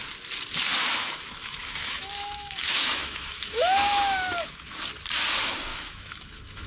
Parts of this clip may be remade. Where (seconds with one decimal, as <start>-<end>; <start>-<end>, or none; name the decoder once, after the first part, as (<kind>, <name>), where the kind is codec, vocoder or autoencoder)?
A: 0.8-4.8 (autoencoder, DAC-VAE); 5.7-6.7